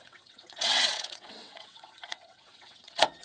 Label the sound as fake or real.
fake